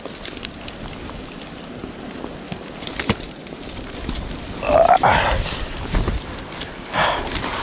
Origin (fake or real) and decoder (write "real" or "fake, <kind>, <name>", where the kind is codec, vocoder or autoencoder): real